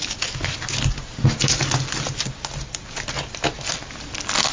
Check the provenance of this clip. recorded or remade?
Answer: recorded